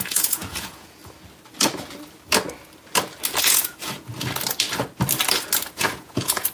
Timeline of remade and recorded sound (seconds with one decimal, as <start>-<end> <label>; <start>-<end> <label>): 0.0-1.0 remade; 1.0-3.4 recorded; 3.4-4.1 remade; 4.1-5.7 recorded; 5.7-6.5 remade

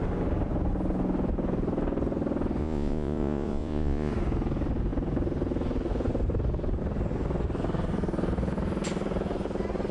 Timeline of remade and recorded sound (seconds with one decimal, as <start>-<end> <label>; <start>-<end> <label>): 0.0-2.6 recorded; 2.6-4.1 remade; 4.1-9.9 recorded

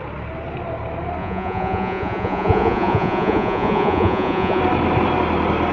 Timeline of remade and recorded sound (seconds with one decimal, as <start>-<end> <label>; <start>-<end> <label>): 0.0-1.2 recorded; 1.2-4.6 remade; 4.6-5.7 recorded

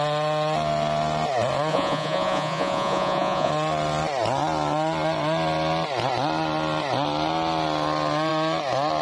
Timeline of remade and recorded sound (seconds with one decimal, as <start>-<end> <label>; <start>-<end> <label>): 0.0-1.7 recorded; 1.7-3.5 remade; 3.5-9.0 recorded

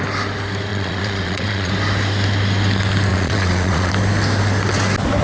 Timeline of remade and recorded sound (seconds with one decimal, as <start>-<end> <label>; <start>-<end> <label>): 0.0-0.7 recorded; 0.7-1.7 remade; 1.7-3.1 recorded; 3.1-3.9 remade; 3.9-5.2 recorded

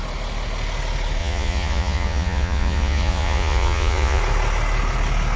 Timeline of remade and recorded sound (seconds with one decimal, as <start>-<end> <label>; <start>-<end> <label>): 0.0-1.2 recorded; 1.2-4.2 remade; 4.2-5.4 recorded

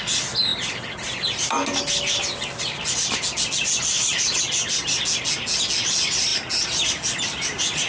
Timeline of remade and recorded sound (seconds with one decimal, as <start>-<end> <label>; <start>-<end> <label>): 0.0-7.9 recorded